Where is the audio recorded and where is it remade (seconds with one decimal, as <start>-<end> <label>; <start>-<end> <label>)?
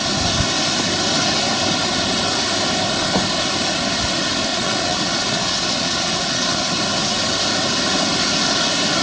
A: 0.0-4.5 recorded; 4.5-6.7 remade; 6.7-9.0 recorded